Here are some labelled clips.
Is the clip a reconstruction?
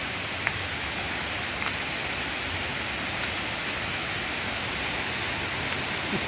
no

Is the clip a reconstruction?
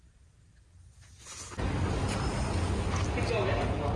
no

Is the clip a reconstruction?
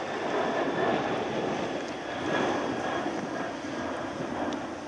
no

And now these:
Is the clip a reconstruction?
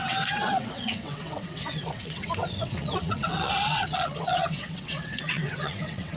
yes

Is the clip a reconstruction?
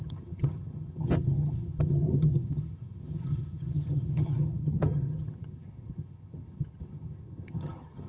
yes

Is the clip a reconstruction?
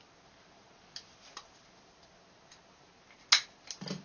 no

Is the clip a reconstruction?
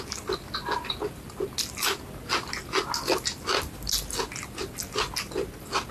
no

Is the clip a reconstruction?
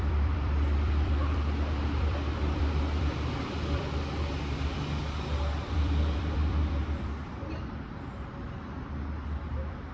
yes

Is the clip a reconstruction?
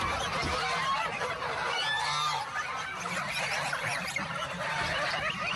no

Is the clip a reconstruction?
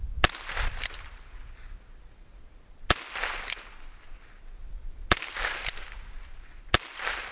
no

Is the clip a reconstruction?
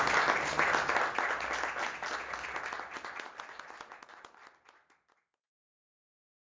no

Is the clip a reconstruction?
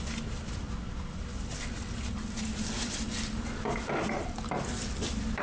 no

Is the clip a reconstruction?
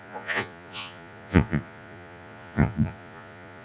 yes